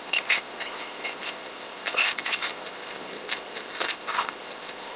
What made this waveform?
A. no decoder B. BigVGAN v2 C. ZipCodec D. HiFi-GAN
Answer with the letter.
C